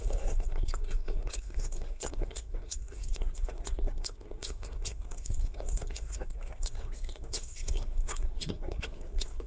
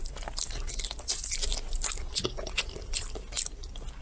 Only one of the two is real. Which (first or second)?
second